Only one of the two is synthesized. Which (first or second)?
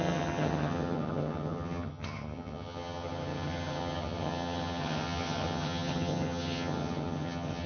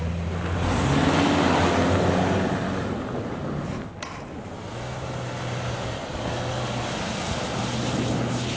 first